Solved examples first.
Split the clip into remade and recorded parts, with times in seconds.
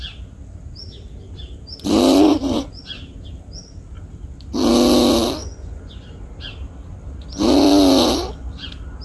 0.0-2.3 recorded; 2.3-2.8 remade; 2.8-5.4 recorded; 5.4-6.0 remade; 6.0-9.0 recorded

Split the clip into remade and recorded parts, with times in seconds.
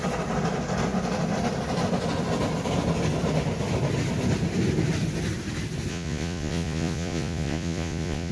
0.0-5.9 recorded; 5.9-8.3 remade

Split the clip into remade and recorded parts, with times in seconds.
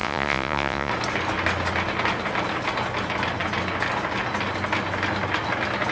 0.0-0.9 remade; 0.9-5.9 recorded